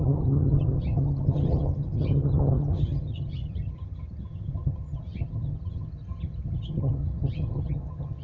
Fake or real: fake